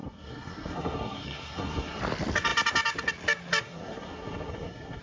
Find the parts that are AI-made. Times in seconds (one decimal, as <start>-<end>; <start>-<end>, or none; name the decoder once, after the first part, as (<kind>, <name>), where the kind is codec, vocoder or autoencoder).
0.0-2.0 (codec, SNAC); 3.6-5.0